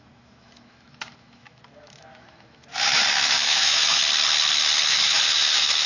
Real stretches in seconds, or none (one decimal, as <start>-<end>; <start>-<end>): 4.0-4.9